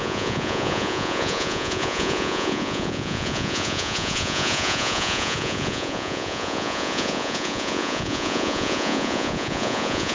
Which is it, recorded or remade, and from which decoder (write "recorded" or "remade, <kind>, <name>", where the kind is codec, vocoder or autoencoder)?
remade, vocoder, Vocos